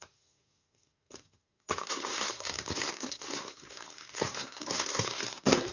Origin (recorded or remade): remade